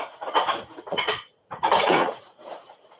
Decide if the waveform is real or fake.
fake